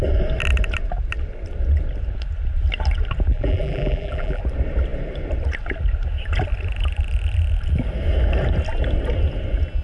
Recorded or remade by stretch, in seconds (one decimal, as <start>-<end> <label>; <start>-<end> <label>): 0.0-3.3 recorded; 3.3-4.4 remade; 4.4-9.8 recorded